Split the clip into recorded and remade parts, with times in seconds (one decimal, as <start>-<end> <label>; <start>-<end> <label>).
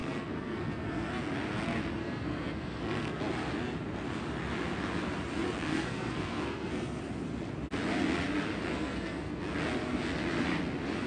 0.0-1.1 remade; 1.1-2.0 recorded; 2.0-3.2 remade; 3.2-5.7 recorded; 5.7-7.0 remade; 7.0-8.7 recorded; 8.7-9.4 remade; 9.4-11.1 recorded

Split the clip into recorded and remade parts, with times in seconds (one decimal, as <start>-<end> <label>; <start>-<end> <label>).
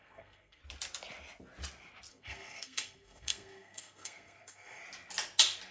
0.0-0.6 remade; 0.6-2.1 recorded; 2.1-4.8 remade; 4.8-5.7 recorded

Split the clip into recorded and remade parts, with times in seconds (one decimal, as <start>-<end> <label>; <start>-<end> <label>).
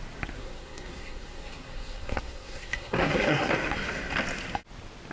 0.0-0.4 recorded; 0.4-3.5 remade; 3.5-5.1 recorded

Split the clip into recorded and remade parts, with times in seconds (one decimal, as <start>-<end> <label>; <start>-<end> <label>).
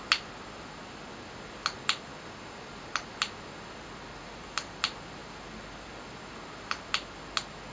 0.0-7.7 recorded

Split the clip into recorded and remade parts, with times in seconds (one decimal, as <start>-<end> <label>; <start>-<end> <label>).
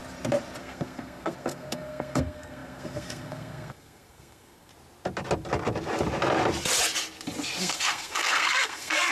0.0-0.6 recorded; 0.6-4.7 remade; 4.7-7.6 recorded; 7.6-9.1 remade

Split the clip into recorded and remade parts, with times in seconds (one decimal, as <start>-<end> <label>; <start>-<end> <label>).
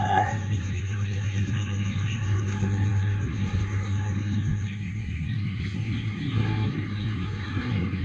0.0-8.0 remade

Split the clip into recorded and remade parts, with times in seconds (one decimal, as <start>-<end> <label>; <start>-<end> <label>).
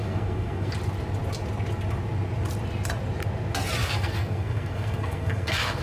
0.0-0.7 remade; 0.7-3.8 recorded; 3.8-5.8 remade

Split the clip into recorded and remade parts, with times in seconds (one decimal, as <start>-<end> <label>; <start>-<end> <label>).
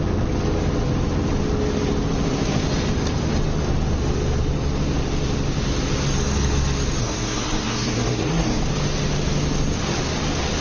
0.0-7.0 recorded; 7.0-8.6 remade; 8.6-10.6 recorded